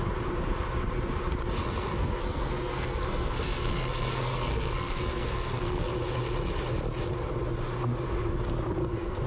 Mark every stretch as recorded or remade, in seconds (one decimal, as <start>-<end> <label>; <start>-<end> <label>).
0.0-1.6 recorded; 1.6-5.9 remade; 5.9-8.8 recorded; 8.8-9.3 remade